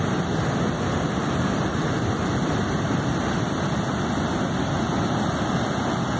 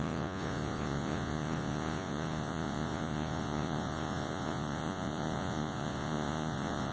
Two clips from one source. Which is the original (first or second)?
first